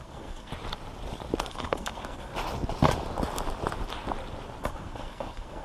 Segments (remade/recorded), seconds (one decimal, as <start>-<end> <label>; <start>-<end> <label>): 0.0-0.5 remade; 0.5-1.5 recorded; 1.5-2.3 remade; 2.3-4.6 recorded; 4.6-5.6 remade